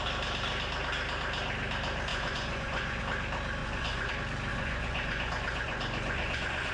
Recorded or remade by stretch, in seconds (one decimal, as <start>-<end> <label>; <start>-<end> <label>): 0.0-2.1 recorded; 2.1-3.0 remade; 3.0-3.6 recorded; 3.6-4.1 remade; 4.1-4.5 recorded; 4.5-6.7 remade